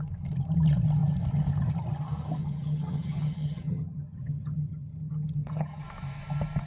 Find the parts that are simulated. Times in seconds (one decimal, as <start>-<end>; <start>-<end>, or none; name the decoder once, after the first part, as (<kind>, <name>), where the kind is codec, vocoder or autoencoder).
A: 2.4-5.8 (vocoder, HiFi-GAN)